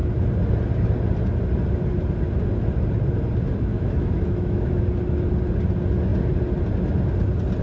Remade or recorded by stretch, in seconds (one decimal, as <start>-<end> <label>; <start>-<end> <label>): 0.0-3.7 recorded; 3.7-4.8 remade; 4.8-7.6 recorded